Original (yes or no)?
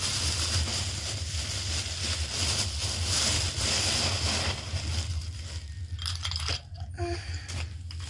yes